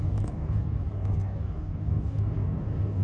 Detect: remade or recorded remade